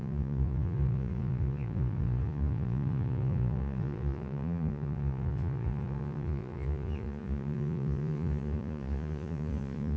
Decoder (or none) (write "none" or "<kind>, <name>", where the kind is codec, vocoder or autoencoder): vocoder, Vocos